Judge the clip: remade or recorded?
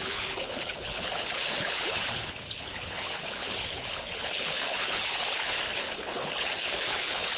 remade